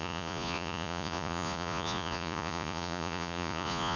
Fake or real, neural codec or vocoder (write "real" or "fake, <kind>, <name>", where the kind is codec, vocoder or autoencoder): fake, vocoder, Vocos